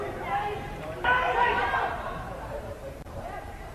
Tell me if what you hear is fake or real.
fake